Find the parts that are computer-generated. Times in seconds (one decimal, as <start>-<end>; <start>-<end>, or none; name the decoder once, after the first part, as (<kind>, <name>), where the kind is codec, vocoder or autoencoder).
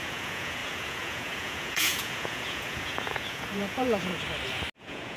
0.0-4.1 (vocoder, Vocos); 4.8-5.2